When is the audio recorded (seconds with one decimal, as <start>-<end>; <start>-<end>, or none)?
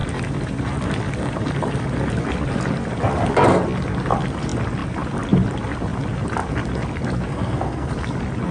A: 0.0-7.3; 7.9-8.5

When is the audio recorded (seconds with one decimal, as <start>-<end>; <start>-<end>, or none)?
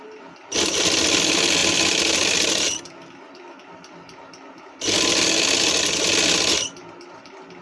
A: 0.0-7.6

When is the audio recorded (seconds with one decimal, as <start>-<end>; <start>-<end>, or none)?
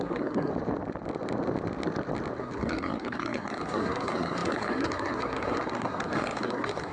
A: 0.5-2.4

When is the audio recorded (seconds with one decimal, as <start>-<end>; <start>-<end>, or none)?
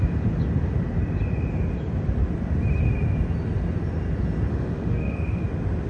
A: 0.0-4.5; 5.4-5.9